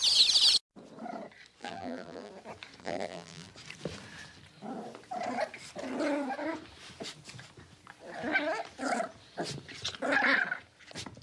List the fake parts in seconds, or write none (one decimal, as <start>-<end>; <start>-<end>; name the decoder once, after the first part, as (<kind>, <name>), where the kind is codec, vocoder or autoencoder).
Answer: 1.6-2.3 (vocoder, BigVGAN v2); 2.8-3.5